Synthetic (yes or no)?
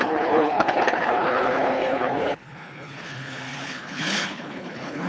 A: yes